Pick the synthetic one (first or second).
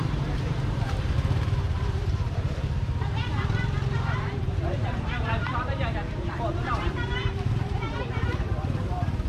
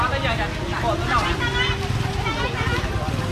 first